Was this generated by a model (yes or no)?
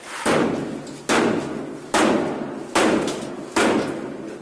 no